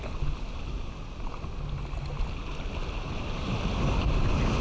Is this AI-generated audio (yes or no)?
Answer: no